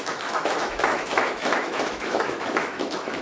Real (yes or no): no